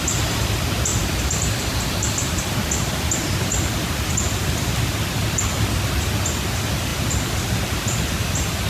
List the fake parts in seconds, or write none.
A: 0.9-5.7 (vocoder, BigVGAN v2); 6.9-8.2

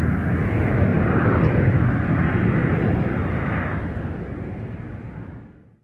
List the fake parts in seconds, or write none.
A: 0.9-1.4 (vocoder, BigVGAN v2); 2.6-4.8